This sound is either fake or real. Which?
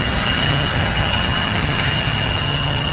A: fake